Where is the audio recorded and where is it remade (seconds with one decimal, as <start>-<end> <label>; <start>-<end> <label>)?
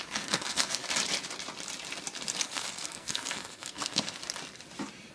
0.0-0.8 remade; 0.8-2.4 recorded; 2.4-4.2 remade; 4.2-5.1 recorded